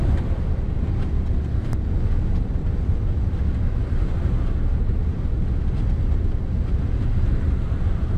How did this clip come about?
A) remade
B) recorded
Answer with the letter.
B